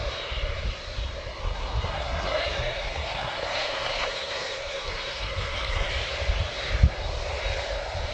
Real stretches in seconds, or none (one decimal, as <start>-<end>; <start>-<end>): 0.0-1.4; 5.9-8.1